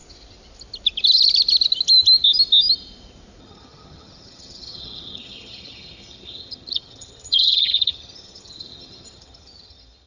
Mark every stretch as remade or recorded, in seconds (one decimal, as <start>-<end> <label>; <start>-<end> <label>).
0.0-3.4 recorded; 3.4-10.1 remade